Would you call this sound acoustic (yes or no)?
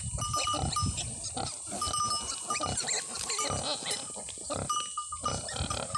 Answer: yes